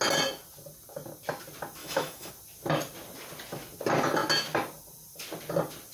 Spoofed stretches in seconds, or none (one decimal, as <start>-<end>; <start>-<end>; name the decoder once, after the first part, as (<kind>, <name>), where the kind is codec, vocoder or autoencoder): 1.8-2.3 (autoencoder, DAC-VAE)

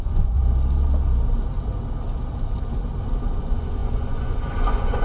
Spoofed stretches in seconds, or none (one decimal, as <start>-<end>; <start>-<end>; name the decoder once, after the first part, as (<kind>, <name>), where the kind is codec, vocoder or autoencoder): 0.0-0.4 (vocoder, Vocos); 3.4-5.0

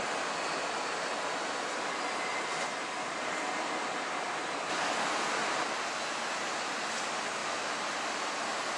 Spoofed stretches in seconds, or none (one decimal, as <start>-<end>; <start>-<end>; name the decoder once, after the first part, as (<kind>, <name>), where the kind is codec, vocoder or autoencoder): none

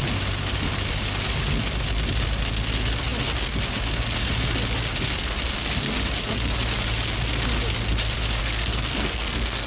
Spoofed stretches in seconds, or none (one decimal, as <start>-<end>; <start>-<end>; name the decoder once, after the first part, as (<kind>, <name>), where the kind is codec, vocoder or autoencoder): 8.4-9.7 (codec, SNAC)

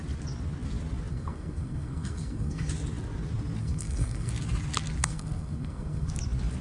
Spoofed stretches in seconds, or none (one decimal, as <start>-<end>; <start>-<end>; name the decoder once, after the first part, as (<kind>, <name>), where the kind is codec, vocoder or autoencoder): 1.1-2.7 (codec, SNAC); 3.6-4.3; 5.0-6.1

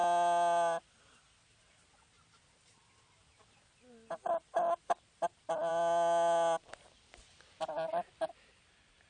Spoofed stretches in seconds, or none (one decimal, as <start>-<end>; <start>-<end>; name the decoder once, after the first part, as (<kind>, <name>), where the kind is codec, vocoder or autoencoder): 4.2-5.7 (vocoder, BigVGAN v2); 6.8-9.1

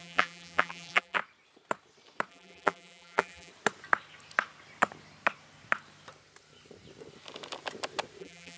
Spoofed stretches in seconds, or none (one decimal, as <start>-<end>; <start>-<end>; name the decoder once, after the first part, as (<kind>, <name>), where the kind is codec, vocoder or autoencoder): 0.0-1.2 (vocoder, BigVGAN v2); 2.3-3.5; 8.2-8.6